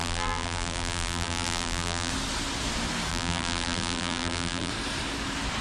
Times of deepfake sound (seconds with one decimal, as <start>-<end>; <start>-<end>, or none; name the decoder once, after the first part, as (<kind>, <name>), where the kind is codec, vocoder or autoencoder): 0.0-2.1 (vocoder, BigVGAN v2); 3.1-4.7